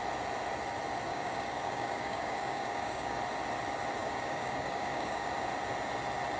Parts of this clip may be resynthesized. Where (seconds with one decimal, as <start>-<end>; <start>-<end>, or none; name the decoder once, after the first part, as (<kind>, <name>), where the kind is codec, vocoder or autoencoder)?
1.1-3.2 (codec, DAC); 4.0-5.3